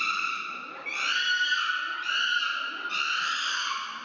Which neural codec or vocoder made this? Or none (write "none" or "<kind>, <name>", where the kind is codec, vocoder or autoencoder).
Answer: none